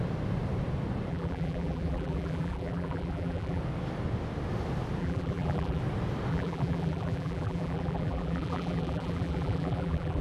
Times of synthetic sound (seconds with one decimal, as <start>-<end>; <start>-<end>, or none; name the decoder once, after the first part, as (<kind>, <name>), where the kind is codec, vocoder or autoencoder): 1.1-3.6 (vocoder, BigVGAN v2); 5.0-5.8; 6.3-10.2